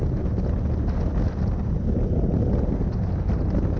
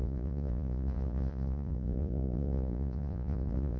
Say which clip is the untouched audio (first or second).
first